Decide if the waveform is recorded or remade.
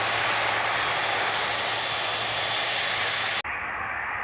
recorded